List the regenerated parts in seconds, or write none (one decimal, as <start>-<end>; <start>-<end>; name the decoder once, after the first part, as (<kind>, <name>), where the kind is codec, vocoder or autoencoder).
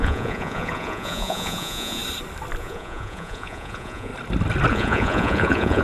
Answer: 0.0-2.0 (vocoder, Vocos); 2.6-4.1; 4.7-5.8